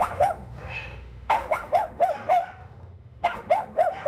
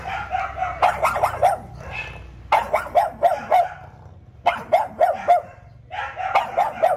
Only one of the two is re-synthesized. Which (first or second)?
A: first